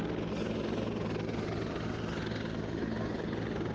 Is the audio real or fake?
real